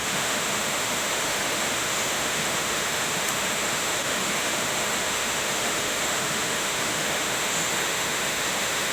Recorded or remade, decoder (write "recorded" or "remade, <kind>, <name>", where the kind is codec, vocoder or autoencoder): remade, autoencoder, DAC-VAE